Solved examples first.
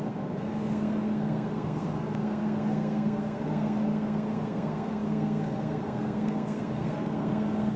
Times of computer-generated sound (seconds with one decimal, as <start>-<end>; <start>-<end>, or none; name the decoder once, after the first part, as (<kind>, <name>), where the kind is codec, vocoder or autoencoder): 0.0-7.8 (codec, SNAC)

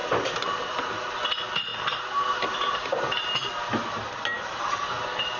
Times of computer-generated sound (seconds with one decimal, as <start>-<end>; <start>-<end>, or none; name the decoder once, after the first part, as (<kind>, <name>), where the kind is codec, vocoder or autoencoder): none

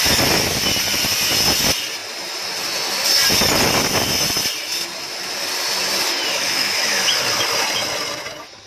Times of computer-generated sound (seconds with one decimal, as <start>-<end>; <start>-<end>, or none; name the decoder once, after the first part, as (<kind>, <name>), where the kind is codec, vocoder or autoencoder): 6.3-7.1 (autoencoder, DAC-VAE)

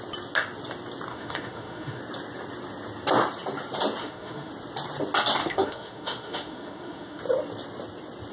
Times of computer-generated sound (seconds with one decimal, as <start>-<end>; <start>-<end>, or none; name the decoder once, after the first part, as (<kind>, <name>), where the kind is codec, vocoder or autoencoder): 1.1-2.0 (autoencoder, DAC-VAE); 4.0-4.5; 5.4-7.2